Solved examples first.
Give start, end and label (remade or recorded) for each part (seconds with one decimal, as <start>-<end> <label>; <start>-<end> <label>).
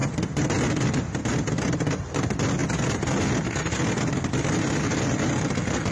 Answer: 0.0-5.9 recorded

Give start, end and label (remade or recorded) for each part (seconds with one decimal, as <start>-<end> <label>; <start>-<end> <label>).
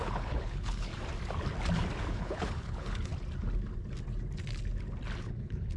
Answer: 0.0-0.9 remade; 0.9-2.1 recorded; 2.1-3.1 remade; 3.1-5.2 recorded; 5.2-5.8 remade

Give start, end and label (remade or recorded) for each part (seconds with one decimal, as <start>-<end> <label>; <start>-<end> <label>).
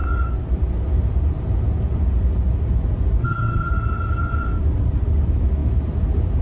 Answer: 0.0-3.2 recorded; 3.2-3.7 remade; 3.7-6.4 recorded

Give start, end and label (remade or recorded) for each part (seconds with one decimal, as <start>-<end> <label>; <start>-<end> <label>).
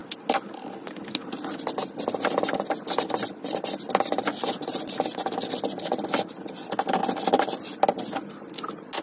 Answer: 0.0-9.0 recorded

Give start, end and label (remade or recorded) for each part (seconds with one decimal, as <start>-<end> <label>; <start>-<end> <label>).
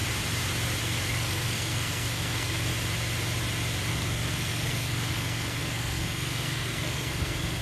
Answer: 0.0-0.8 recorded; 0.8-2.7 remade; 2.7-3.9 recorded; 3.9-7.6 remade